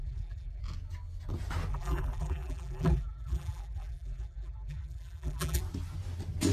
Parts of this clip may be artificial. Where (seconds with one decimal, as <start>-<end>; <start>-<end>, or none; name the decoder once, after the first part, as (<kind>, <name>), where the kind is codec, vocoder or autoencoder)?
0.0-0.6 (vocoder, BigVGAN v2); 1.7-5.6